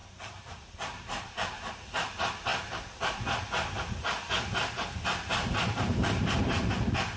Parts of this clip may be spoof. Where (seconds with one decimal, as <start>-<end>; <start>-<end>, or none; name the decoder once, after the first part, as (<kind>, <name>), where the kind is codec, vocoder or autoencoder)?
0.0-2.1 (vocoder, BigVGAN v2); 5.4-6.6